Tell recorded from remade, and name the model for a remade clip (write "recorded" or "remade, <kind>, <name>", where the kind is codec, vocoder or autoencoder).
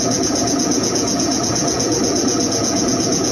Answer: remade, vocoder, Vocos